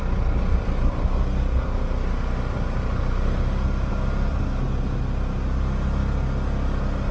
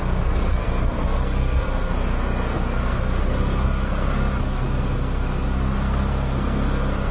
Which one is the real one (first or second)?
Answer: first